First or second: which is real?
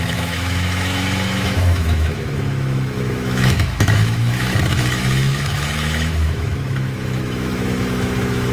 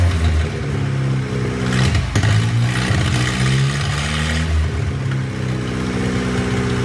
second